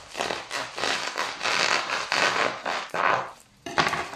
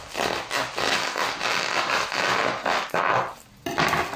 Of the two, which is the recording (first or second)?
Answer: second